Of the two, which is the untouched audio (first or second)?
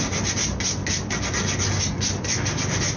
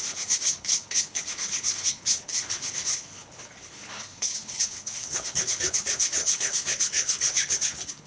first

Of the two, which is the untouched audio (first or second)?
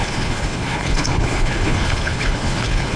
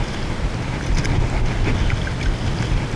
second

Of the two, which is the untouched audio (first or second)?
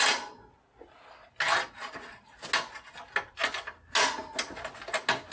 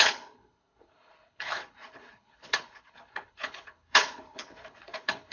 first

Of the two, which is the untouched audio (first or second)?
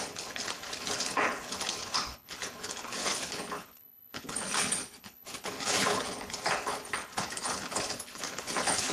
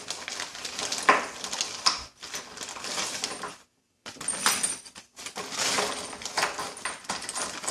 second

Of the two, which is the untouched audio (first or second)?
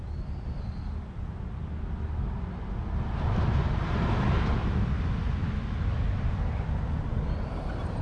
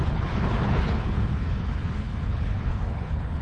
first